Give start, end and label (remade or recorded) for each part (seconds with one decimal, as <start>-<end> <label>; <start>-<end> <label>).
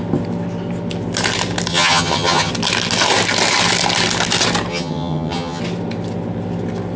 0.0-1.7 recorded; 1.7-2.5 remade; 2.5-4.7 recorded; 4.7-5.6 remade; 5.6-7.0 recorded